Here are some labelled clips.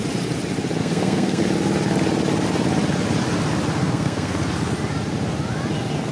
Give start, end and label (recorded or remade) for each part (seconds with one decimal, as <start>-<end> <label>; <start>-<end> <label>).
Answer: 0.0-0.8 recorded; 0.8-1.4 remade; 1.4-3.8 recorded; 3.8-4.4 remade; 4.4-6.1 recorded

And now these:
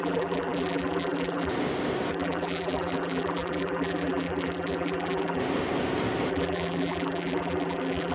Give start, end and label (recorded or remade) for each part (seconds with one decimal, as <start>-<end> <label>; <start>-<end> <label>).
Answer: 0.0-1.5 remade; 1.5-2.1 recorded; 2.1-5.4 remade; 5.4-6.3 recorded; 6.3-8.1 remade

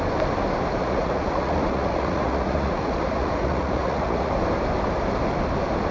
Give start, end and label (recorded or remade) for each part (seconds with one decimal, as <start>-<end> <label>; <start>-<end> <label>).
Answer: 0.0-0.8 recorded; 0.8-4.3 remade; 4.3-5.9 recorded